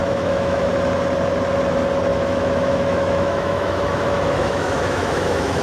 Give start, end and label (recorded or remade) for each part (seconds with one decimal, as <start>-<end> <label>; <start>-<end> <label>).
0.0-0.7 remade; 0.7-2.1 recorded; 2.1-5.6 remade